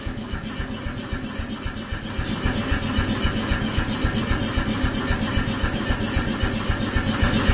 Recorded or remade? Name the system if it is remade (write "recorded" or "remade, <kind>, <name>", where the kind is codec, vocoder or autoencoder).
recorded